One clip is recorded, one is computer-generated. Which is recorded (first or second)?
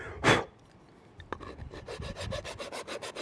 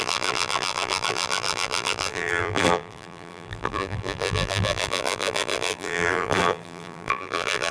first